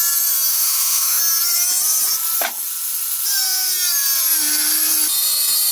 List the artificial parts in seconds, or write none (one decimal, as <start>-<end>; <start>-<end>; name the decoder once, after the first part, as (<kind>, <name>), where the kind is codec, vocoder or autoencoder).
0.5-1.2 (autoencoder, DAC-VAE)